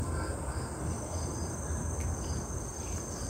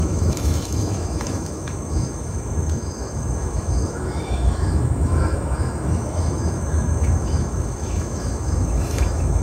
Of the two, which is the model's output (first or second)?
second